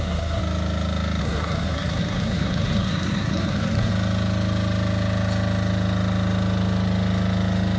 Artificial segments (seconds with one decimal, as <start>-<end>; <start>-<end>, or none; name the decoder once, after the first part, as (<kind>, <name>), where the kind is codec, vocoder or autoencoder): 0.0-0.4 (codec, SNAC); 1.2-3.9